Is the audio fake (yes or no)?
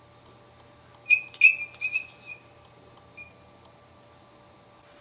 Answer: no